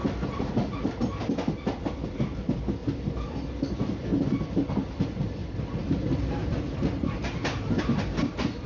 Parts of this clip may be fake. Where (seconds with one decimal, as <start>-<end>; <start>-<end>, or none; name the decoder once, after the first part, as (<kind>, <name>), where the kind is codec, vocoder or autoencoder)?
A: none